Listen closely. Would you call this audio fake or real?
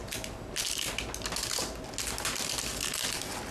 real